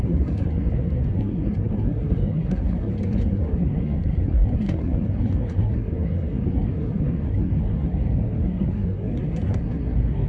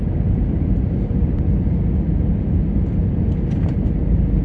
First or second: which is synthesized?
first